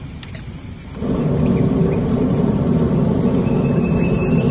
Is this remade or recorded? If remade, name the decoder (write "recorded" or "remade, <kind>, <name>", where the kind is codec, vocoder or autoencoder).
remade, vocoder, BigVGAN v2